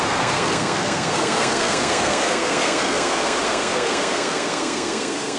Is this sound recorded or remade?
remade